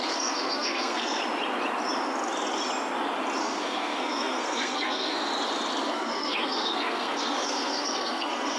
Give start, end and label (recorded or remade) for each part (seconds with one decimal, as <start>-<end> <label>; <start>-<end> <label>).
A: 0.0-1.2 remade; 1.2-3.4 recorded; 3.4-5.3 remade; 5.3-5.8 recorded; 5.8-8.6 remade